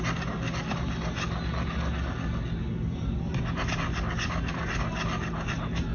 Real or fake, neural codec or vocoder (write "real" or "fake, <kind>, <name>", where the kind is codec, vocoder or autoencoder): real